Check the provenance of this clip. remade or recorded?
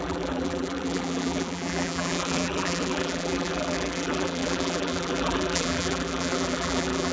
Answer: remade